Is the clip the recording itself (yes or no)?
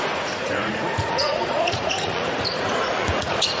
no